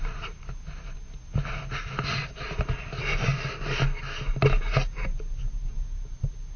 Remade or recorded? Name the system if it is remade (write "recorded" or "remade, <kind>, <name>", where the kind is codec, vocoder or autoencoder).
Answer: recorded